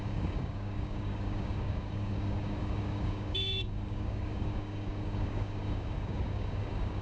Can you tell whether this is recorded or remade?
remade